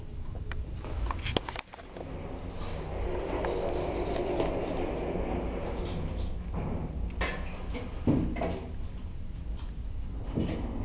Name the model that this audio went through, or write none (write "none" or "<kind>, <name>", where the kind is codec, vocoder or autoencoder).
none